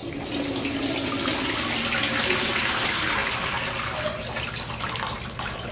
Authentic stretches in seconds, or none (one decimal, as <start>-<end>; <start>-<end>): 0.0-2.2; 3.2-5.3